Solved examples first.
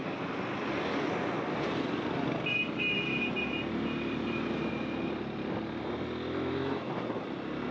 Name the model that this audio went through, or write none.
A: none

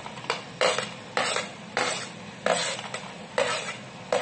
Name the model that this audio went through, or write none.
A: none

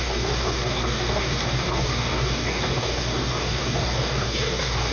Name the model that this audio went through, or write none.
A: codec, DAC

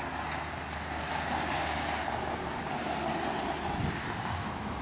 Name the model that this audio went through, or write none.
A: none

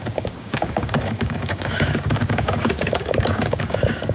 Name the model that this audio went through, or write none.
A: codec, DAC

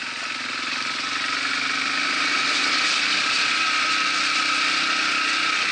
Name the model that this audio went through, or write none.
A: none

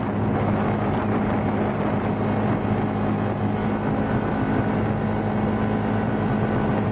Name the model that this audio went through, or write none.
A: none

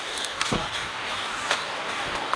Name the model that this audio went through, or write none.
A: codec, DAC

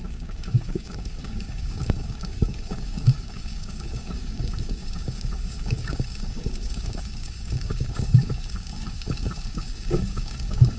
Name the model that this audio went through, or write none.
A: codec, DAC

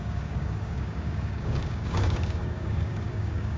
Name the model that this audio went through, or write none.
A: codec, DAC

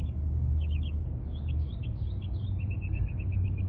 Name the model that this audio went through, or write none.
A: codec, DAC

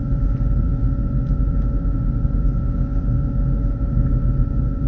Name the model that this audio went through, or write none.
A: none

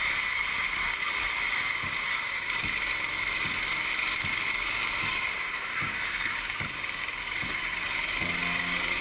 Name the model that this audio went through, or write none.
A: codec, DAC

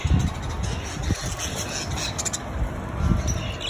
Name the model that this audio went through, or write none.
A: none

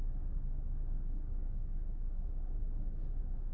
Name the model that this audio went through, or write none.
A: codec, DAC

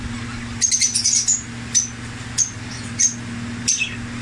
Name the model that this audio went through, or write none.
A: none